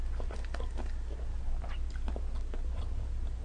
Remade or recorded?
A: recorded